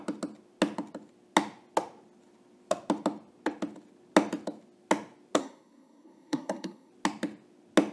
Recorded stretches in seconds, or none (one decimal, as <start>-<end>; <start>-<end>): 0.0-5.4; 6.9-7.9